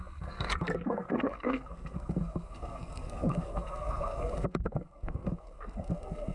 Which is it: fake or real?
fake